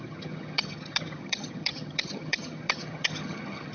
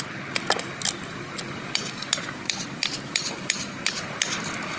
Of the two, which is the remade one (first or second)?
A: first